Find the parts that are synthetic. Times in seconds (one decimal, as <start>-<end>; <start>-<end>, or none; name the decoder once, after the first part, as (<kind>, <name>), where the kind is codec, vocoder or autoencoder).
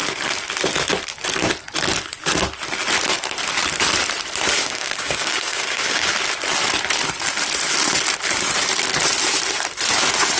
4.6-6.1 (codec, DAC)